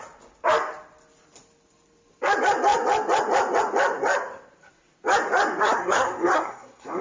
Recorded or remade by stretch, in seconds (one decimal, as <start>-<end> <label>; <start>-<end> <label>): 0.0-5.6 recorded; 5.6-7.0 remade